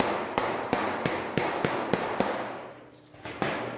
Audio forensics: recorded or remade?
recorded